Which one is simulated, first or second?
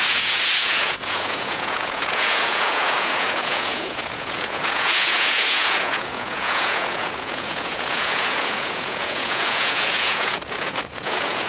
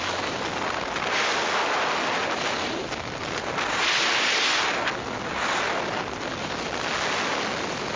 first